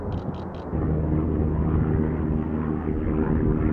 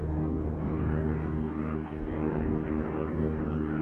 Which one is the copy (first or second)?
second